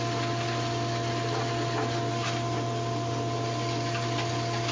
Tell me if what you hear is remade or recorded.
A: recorded